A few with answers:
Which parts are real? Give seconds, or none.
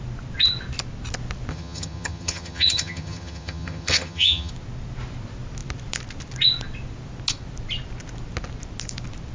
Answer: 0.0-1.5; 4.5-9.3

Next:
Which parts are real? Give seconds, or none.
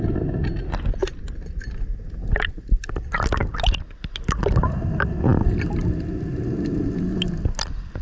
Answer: 0.0-8.0